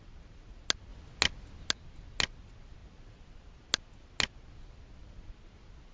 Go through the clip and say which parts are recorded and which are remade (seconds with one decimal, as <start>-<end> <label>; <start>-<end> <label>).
0.0-5.9 recorded